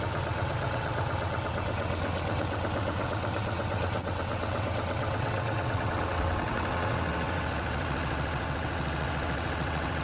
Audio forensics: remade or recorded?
remade